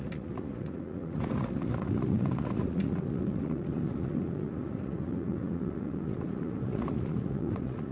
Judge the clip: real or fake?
fake